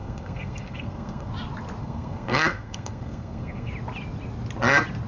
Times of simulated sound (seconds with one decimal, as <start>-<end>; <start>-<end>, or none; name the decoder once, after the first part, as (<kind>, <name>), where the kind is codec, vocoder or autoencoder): 0.0-1.3 (codec, SNAC); 1.8-3.7